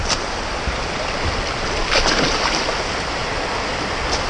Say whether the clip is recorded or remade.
recorded